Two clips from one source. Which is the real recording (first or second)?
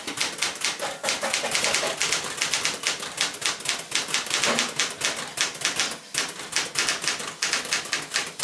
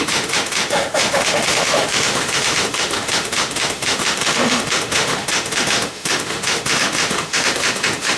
first